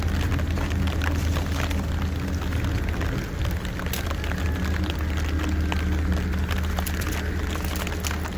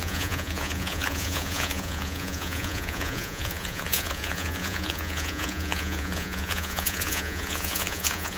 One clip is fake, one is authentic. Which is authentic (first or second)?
first